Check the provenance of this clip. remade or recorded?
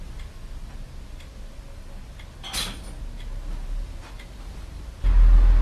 recorded